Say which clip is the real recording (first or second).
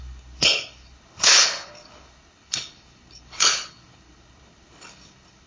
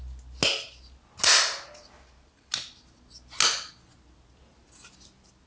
second